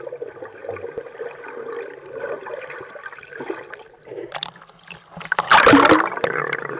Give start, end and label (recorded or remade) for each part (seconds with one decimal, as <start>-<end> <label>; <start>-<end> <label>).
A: 0.0-0.6 recorded; 0.6-1.7 remade; 1.7-2.4 recorded; 2.4-3.6 remade; 3.6-6.8 recorded

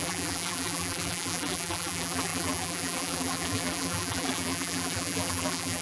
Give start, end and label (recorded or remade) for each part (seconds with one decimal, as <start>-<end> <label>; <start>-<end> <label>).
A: 0.0-5.8 remade